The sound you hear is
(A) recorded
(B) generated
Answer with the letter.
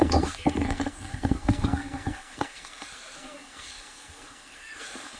B